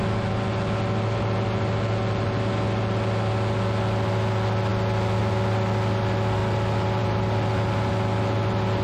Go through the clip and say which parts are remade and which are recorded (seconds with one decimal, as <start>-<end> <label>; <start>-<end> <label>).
0.0-8.8 recorded